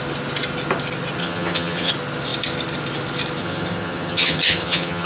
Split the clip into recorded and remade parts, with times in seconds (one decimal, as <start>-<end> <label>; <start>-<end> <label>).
0.0-1.2 recorded; 1.2-1.9 remade; 1.9-3.4 recorded; 3.4-5.1 remade